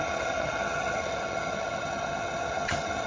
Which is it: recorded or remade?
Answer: remade